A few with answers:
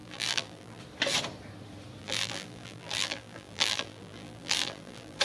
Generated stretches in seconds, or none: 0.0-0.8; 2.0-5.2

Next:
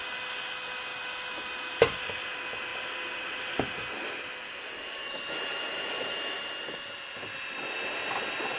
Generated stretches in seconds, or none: 2.7-5.3

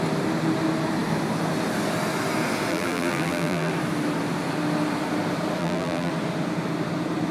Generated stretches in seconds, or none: 2.7-3.7; 5.6-6.1

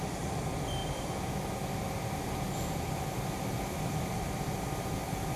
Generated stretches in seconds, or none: 0.0-0.8; 3.9-5.4